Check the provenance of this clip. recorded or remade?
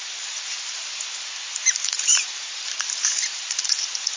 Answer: remade